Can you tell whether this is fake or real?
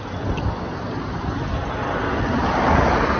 real